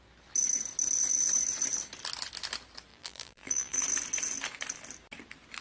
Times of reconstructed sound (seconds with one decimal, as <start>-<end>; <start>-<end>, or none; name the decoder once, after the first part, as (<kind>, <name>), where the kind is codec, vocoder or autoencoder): 2.9-3.8 (vocoder, BigVGAN v2)